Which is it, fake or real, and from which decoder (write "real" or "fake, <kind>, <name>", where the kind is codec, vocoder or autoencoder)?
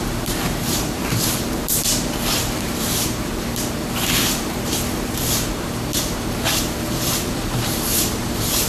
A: fake, vocoder, BigVGAN v2